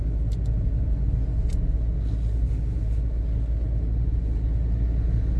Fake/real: real